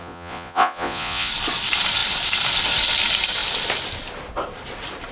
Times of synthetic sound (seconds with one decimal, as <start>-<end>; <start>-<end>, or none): 0.0-1.3